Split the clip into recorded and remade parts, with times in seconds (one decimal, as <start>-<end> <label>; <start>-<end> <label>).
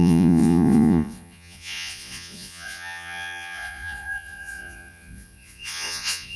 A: 0.0-6.4 remade